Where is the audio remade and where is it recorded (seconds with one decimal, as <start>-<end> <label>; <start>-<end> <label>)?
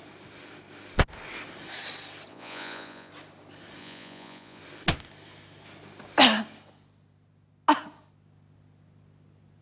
0.0-2.3 recorded; 2.3-3.1 remade; 3.1-3.8 recorded; 3.8-4.6 remade; 4.6-9.6 recorded